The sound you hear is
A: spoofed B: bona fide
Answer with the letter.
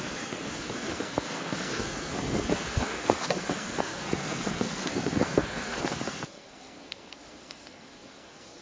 A